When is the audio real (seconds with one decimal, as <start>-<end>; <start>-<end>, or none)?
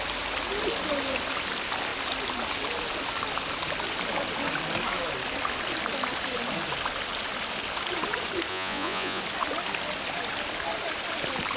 0.0-8.5; 9.2-11.6